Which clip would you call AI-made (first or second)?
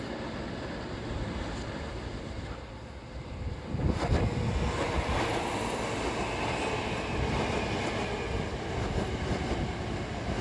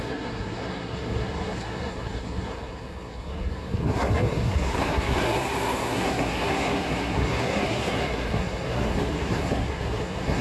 second